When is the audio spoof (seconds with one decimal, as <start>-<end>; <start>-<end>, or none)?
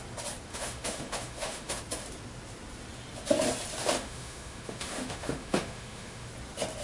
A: 0.5-1.8; 3.8-6.3